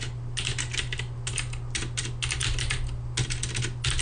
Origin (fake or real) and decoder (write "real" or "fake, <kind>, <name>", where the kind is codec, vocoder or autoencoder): real